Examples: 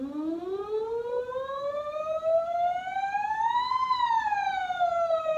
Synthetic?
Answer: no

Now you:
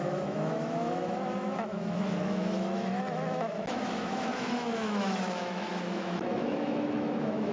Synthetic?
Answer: yes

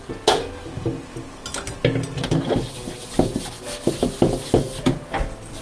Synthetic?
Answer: no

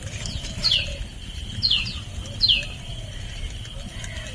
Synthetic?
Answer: no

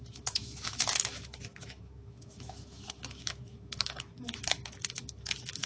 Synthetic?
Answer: yes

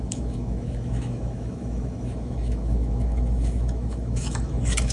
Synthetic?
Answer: yes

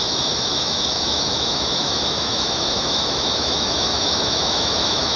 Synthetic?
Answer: yes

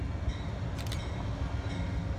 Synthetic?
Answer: no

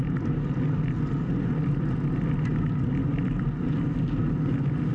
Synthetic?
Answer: no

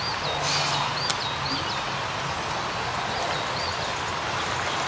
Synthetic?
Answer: no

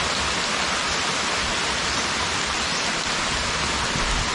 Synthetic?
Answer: no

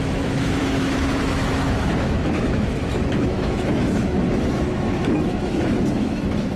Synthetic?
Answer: yes